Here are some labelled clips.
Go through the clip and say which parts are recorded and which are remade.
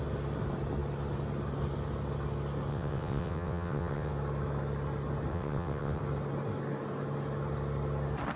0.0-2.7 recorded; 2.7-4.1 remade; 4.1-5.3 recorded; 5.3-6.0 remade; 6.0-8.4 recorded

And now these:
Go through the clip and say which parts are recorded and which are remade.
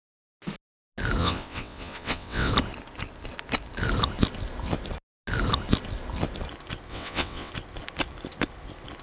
0.0-1.2 recorded; 1.2-2.5 remade; 2.5-6.9 recorded; 6.9-7.5 remade; 7.5-9.0 recorded